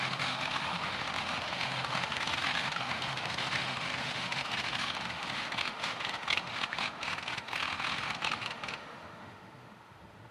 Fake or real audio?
fake